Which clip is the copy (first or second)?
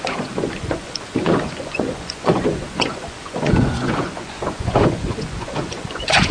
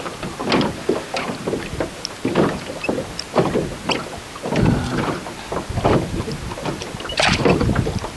first